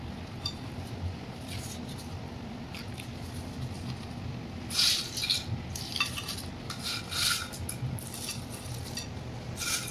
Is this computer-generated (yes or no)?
no